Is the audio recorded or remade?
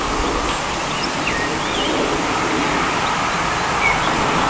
recorded